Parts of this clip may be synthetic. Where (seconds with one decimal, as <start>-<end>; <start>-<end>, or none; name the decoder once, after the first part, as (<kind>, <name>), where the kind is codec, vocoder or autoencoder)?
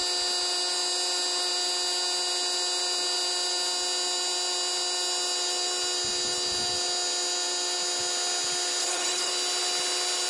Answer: 8.8-9.3 (codec, HILCodec)